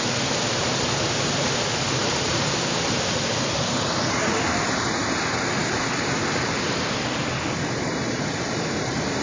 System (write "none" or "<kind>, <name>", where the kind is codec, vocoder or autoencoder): none